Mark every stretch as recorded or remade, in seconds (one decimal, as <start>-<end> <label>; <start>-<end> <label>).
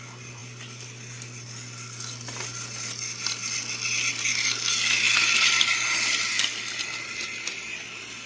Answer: 0.0-8.3 recorded